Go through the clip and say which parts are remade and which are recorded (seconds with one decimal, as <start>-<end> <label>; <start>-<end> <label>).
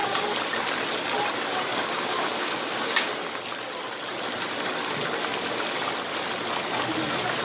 0.0-1.7 recorded; 1.7-3.1 remade; 3.1-7.4 recorded